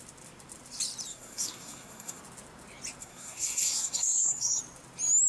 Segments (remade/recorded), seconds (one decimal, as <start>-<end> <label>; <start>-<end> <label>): 0.0-1.1 recorded; 1.1-2.2 remade; 2.2-3.0 recorded; 3.0-4.6 remade; 4.6-5.3 recorded